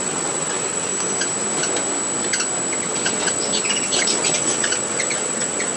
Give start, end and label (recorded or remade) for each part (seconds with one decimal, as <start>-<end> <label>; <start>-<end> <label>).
0.0-0.9 remade; 0.9-2.8 recorded; 2.8-5.8 remade